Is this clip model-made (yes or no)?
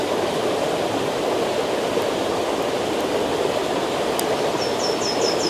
no